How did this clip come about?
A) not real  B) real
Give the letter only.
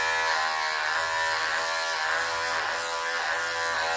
B